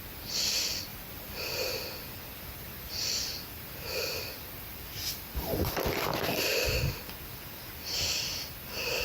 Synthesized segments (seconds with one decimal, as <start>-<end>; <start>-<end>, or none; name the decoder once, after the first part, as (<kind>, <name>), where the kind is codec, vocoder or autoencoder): none